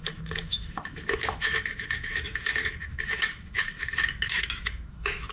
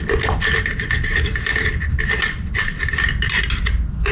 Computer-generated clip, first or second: first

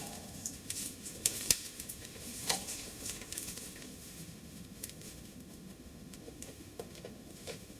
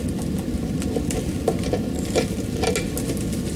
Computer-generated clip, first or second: first